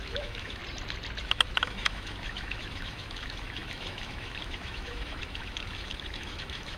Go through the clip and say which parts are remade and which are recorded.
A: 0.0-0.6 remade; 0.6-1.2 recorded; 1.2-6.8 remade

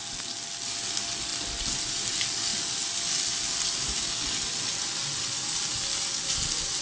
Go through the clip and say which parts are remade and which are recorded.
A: 0.0-6.8 recorded

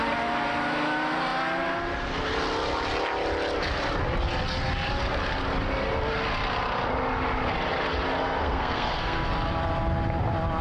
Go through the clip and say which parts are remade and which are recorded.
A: 0.0-8.4 recorded; 8.4-9.3 remade; 9.3-10.6 recorded

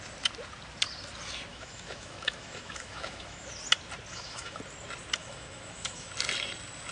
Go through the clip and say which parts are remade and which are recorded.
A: 0.0-1.5 recorded; 1.5-3.5 remade; 3.5-4.1 recorded; 4.1-4.6 remade; 4.6-5.2 recorded; 5.2-6.1 remade; 6.1-6.9 recorded

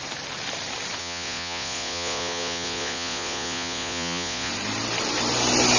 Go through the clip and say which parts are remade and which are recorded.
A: 0.0-1.0 recorded; 1.0-4.5 remade; 4.5-5.8 recorded

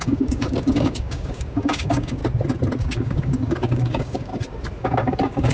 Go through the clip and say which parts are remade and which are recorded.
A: 0.0-2.2 remade; 2.2-2.8 recorded; 2.8-4.3 remade; 4.3-4.8 recorded; 4.8-5.5 remade

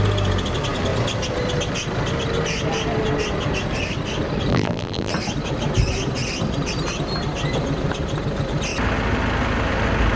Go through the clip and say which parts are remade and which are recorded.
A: 0.0-4.5 recorded; 4.5-5.1 remade; 5.1-10.2 recorded